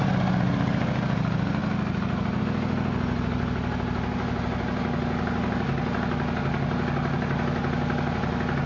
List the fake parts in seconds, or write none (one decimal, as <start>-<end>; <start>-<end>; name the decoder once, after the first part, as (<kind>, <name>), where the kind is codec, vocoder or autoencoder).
none

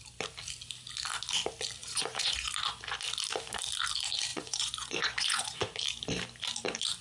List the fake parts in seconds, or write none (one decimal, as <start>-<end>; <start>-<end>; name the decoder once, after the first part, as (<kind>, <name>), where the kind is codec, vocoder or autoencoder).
1.8-2.5 (vocoder, Vocos); 4.3-5.6